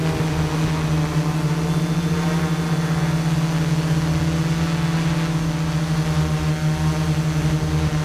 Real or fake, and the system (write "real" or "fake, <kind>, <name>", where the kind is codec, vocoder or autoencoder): real